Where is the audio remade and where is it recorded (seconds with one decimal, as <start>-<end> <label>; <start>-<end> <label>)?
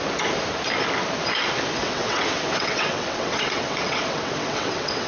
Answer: 0.0-1.8 recorded; 1.8-5.1 remade